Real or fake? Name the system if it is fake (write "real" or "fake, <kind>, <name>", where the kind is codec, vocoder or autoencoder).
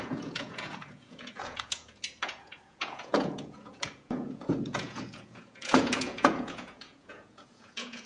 fake, vocoder, Vocos